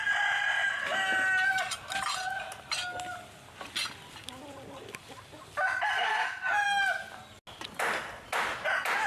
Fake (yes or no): no